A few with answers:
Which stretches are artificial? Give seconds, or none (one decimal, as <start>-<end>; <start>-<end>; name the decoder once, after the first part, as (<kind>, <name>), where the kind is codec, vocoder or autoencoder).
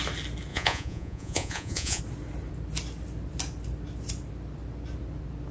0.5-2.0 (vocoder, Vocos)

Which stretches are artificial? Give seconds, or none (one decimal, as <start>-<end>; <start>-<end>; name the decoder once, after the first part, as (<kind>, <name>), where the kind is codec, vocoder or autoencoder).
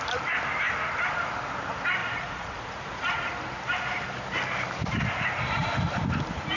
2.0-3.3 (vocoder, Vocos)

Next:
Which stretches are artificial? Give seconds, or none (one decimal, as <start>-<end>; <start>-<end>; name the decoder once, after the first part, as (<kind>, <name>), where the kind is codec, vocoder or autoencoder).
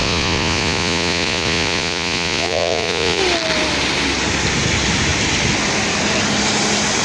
0.0-3.2 (vocoder, Vocos)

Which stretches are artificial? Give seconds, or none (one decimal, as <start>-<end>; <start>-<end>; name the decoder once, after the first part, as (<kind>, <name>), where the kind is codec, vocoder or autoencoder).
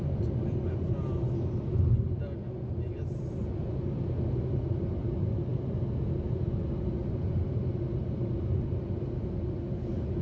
none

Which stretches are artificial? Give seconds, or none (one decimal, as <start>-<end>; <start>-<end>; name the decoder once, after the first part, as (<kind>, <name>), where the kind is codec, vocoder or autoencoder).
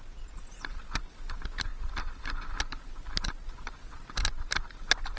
none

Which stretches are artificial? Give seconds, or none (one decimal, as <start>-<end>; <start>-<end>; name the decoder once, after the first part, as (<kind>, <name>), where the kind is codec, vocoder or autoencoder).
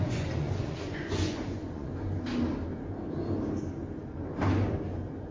0.0-1.9 (vocoder, Vocos)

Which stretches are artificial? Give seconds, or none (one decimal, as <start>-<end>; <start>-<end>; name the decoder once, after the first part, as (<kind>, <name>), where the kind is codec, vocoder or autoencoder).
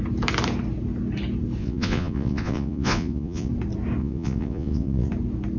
1.6-3.5 (vocoder, Vocos); 4.0-5.1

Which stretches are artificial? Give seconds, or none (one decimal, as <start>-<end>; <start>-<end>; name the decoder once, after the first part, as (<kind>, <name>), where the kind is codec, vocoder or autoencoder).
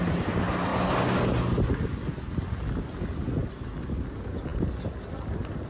none